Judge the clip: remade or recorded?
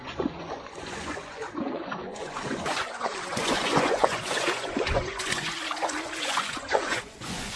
remade